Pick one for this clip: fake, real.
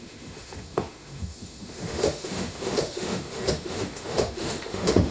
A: fake